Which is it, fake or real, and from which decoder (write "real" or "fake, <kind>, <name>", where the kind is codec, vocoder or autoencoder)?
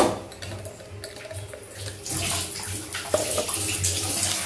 real